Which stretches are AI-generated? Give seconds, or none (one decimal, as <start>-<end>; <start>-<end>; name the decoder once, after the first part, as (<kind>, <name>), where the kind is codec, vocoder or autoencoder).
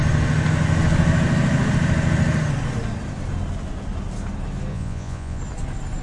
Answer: 4.7-5.4 (vocoder, Vocos)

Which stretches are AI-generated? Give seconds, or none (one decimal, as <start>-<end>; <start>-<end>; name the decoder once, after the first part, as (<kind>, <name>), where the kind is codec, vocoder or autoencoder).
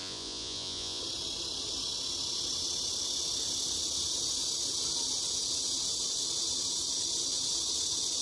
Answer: 0.0-1.0 (vocoder, Vocos)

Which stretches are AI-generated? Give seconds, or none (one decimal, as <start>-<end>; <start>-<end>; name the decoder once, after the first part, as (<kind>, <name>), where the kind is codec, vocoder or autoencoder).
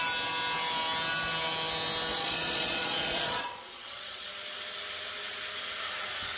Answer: 2.1-4.3 (vocoder, Vocos)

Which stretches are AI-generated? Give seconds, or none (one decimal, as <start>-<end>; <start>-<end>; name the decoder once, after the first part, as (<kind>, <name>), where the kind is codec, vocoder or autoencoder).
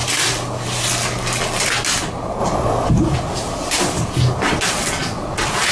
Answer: 2.4-2.9 (vocoder, Vocos)